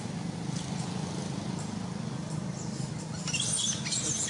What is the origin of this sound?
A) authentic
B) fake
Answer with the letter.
A